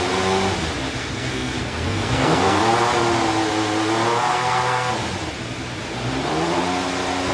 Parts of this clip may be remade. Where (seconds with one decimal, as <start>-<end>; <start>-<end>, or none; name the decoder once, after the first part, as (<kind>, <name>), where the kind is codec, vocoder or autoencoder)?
1.0-2.6 (codec, SNAC); 4.3-4.9